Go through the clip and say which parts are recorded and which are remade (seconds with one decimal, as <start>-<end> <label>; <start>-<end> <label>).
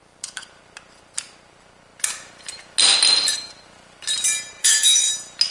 0.0-4.6 recorded; 4.6-5.1 remade; 5.1-5.5 recorded